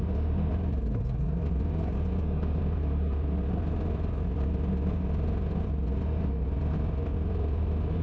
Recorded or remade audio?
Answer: recorded